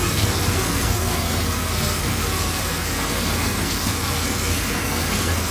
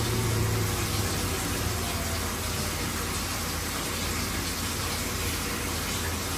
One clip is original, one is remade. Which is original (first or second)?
second